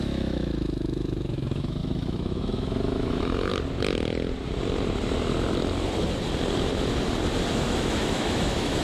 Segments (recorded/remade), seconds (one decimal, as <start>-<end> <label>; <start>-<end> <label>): 0.0-3.5 remade; 3.5-7.5 recorded; 7.5-8.8 remade